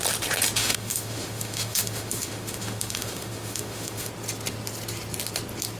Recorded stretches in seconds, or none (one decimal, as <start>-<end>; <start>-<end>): 0.0-0.6; 4.1-5.8